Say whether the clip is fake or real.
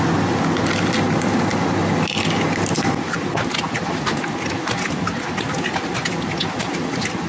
real